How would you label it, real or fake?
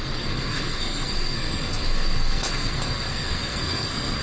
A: fake